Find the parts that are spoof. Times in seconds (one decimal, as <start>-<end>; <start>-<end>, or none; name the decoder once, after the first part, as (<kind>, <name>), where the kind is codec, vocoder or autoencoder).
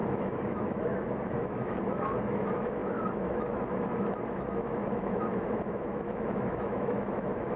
0.0-7.6 (autoencoder, DAC-VAE)